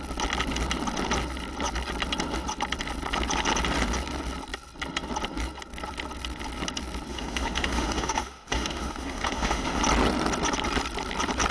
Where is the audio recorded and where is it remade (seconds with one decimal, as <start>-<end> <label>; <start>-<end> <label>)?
0.0-7.1 recorded; 7.1-9.8 remade; 9.8-11.5 recorded